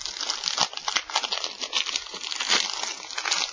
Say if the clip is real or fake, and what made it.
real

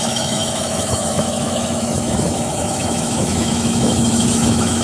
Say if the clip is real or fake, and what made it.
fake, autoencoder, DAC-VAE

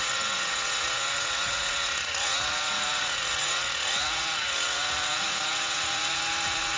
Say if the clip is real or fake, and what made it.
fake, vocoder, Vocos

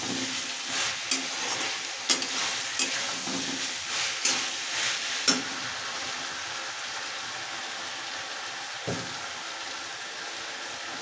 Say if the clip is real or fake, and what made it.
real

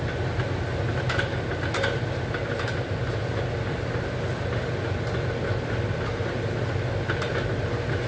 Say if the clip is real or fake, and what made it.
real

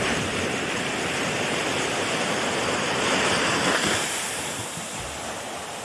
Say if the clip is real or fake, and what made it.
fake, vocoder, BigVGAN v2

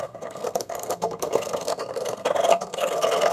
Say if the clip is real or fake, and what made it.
fake, codec, SNAC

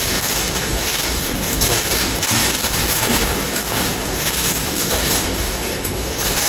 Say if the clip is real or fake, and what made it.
fake, codec, DAC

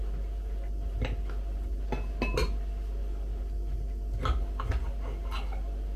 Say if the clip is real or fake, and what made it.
real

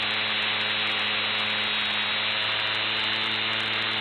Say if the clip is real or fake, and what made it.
real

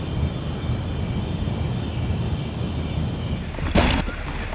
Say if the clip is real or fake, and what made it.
real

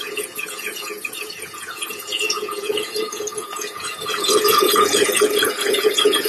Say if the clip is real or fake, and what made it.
fake, vocoder, Vocos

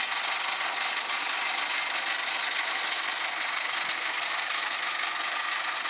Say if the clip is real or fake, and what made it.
real